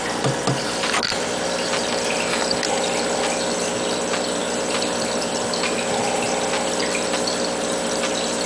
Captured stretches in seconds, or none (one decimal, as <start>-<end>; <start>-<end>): 0.0-8.5